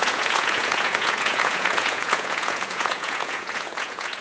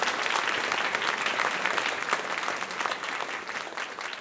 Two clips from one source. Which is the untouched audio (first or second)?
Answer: second